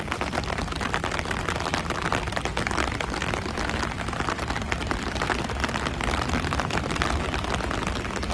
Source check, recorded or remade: recorded